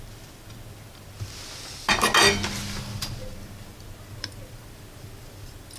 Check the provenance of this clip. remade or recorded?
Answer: recorded